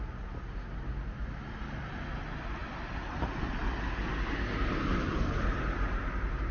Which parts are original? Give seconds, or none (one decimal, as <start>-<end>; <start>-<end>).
0.0-6.5